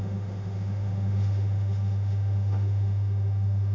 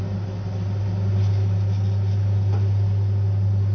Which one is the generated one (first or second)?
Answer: first